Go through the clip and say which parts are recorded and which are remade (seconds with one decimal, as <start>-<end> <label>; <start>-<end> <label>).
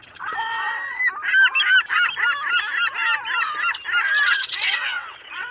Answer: 0.0-1.0 remade; 1.0-4.3 recorded; 4.3-5.5 remade